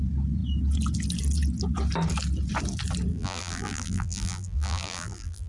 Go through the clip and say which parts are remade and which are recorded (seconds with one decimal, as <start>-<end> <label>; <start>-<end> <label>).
0.0-3.1 recorded; 3.1-5.5 remade